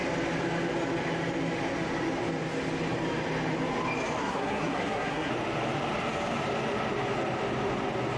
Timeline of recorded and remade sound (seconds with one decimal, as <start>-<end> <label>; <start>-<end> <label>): 0.0-4.2 recorded; 4.2-5.3 remade; 5.3-8.2 recorded